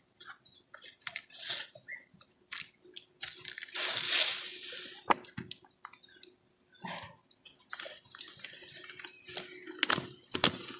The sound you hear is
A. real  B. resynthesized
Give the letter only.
A